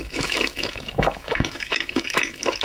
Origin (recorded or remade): remade